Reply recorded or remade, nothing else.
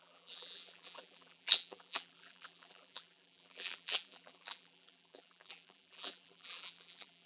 remade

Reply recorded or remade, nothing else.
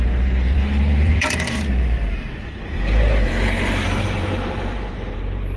remade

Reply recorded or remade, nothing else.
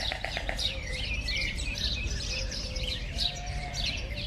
remade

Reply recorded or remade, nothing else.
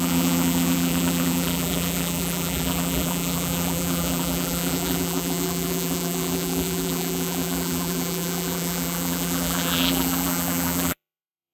remade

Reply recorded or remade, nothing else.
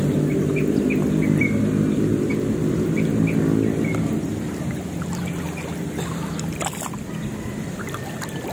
recorded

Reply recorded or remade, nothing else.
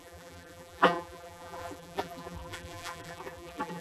remade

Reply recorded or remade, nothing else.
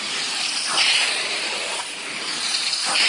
remade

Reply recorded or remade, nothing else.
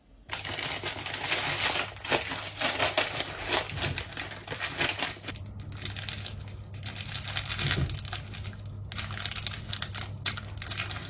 recorded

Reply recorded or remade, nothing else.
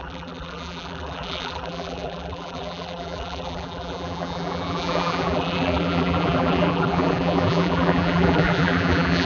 remade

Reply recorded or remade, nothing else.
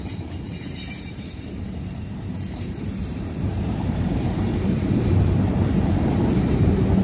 remade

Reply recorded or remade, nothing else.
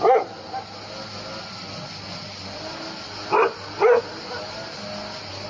recorded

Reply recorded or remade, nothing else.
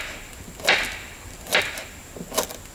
recorded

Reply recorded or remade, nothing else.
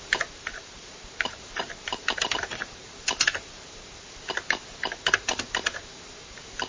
remade